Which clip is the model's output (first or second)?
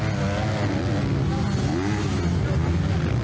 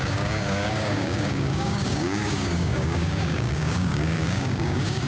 second